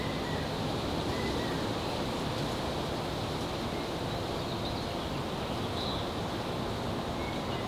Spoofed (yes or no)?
no